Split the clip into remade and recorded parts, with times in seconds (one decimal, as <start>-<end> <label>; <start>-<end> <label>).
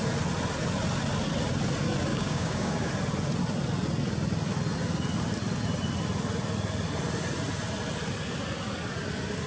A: 0.0-2.1 recorded; 2.1-2.9 remade; 2.9-9.5 recorded